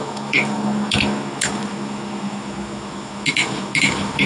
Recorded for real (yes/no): no